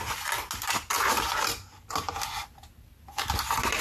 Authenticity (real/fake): real